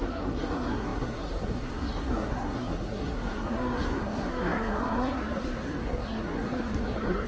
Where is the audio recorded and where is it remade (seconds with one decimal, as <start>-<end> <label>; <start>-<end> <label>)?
0.0-7.3 remade